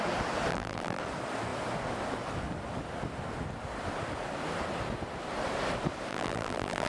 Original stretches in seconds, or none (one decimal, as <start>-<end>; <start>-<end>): 0.0-0.5; 1.0-6.1